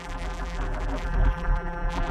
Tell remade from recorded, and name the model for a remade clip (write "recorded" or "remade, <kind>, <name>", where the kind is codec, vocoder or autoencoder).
remade, vocoder, BigVGAN v2